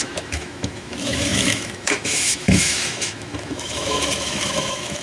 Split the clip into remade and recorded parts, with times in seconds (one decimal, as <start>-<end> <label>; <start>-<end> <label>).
0.0-5.0 remade

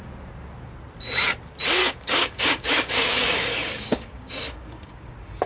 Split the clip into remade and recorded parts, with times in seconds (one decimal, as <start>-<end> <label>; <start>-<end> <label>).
0.0-1.8 recorded; 1.8-5.1 remade; 5.1-5.5 recorded

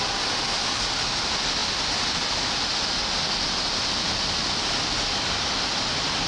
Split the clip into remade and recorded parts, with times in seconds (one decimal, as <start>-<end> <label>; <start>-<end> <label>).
0.0-6.3 recorded

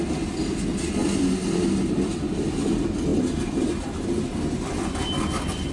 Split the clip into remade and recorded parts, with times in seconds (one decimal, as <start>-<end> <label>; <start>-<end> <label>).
0.0-5.7 recorded

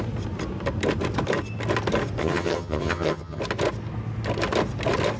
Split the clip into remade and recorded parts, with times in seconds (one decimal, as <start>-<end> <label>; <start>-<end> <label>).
0.0-2.2 recorded; 2.2-3.4 remade; 3.4-5.2 recorded